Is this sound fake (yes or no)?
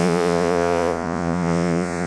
yes